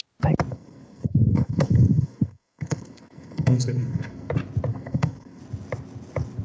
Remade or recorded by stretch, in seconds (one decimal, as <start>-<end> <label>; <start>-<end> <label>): 0.0-0.5 recorded; 0.5-4.3 remade; 4.3-4.7 recorded; 4.7-5.4 remade; 5.4-6.4 recorded